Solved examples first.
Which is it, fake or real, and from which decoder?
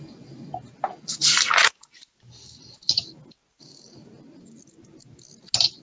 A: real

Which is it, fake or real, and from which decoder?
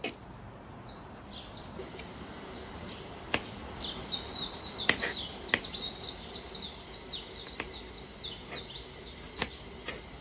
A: real